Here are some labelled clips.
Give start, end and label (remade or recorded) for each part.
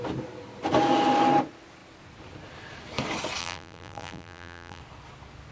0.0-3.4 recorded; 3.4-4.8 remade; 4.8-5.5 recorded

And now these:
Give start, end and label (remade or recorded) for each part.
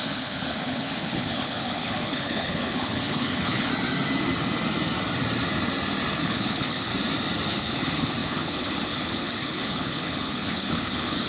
0.0-3.7 remade; 3.7-6.2 recorded; 6.2-6.9 remade; 6.9-7.5 recorded; 7.5-11.3 remade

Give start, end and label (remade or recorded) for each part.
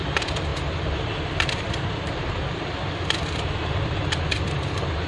0.0-5.1 remade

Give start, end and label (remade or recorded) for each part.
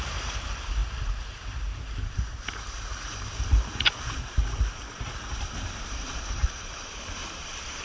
0.0-7.8 remade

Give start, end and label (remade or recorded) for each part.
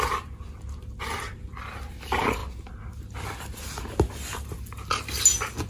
0.0-5.7 recorded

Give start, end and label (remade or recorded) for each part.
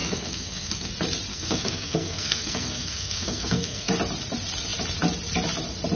0.0-0.9 remade; 0.9-1.3 recorded; 1.3-3.9 remade; 3.9-6.0 recorded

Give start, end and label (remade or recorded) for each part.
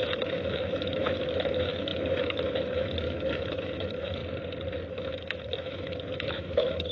0.0-4.2 remade; 4.2-4.9 recorded; 4.9-6.9 remade